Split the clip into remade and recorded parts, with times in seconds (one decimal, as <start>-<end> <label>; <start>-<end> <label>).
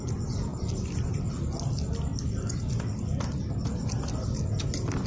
0.0-5.1 recorded